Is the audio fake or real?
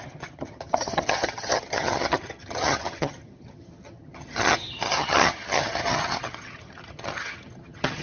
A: fake